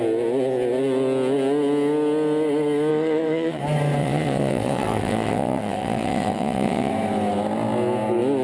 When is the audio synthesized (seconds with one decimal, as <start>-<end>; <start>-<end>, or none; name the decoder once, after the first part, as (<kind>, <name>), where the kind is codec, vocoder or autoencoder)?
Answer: 2.9-3.6 (vocoder, WaveNeXt); 4.0-6.9